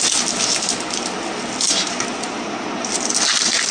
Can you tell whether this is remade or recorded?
recorded